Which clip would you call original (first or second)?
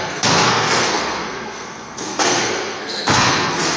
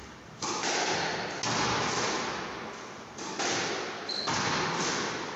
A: second